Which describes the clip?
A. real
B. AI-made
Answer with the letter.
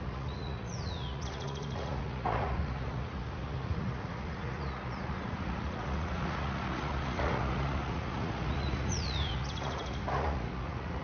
B